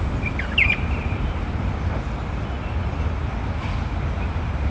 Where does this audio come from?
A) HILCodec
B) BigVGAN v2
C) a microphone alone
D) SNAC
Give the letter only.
C